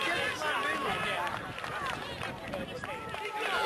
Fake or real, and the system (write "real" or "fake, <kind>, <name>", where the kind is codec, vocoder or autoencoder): real